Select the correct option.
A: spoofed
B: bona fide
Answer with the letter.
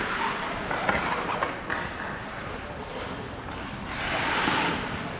B